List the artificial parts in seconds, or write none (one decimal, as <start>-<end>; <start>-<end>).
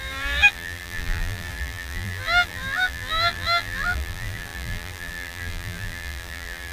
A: 0.0-6.7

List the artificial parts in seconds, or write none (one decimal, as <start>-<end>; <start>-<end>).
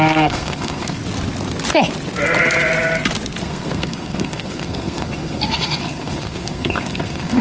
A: 0.0-1.0; 3.4-7.4